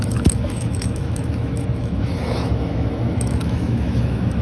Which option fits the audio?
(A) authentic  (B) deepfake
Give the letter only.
B